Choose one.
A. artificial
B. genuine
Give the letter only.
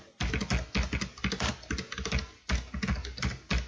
B